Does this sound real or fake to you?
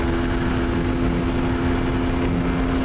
real